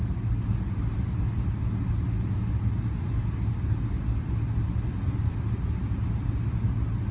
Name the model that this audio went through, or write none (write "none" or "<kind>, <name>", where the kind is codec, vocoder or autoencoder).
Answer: none